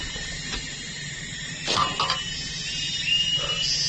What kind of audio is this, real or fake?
real